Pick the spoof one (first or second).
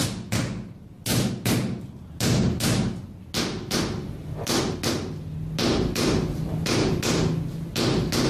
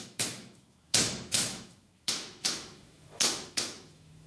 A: second